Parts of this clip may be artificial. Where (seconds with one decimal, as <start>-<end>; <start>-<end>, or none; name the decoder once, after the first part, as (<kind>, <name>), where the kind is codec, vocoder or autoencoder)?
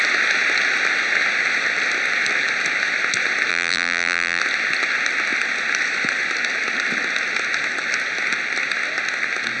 3.5-4.4 (vocoder, BigVGAN v2)